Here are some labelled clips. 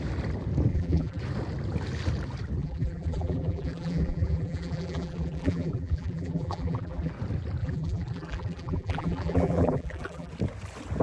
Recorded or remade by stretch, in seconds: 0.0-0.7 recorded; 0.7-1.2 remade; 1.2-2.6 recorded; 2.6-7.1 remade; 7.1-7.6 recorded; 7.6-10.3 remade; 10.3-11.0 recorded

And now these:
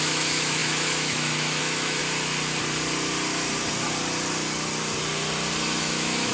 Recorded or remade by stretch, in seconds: 0.0-2.0 remade; 2.0-5.8 recorded; 5.8-6.3 remade

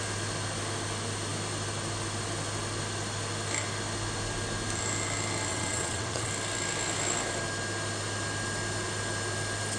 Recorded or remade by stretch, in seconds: 0.0-5.5 recorded; 5.5-6.3 remade; 6.3-9.8 recorded

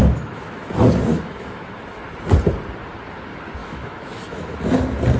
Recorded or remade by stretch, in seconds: 0.0-0.7 remade; 0.7-1.1 recorded; 1.1-1.8 remade; 1.8-3.6 recorded; 3.6-4.6 remade; 4.6-5.2 recorded

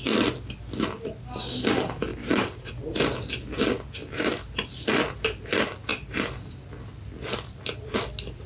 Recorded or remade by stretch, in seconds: 0.0-2.1 recorded; 2.1-2.9 remade; 2.9-4.0 recorded; 4.0-4.7 remade; 4.7-5.9 recorded; 5.9-6.6 remade; 6.6-8.5 recorded

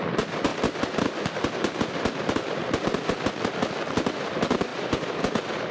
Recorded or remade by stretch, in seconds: 0.0-5.7 recorded

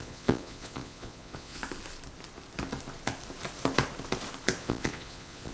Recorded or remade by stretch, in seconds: 0.0-1.6 remade; 1.6-4.6 recorded; 4.6-5.5 remade

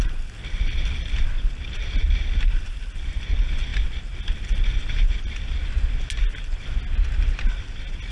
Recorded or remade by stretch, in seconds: 0.0-8.1 recorded